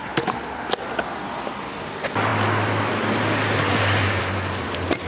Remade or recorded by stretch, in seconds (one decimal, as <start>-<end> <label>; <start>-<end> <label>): 0.0-5.1 recorded